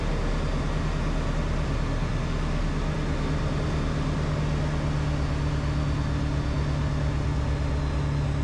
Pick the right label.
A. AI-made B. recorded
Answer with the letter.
B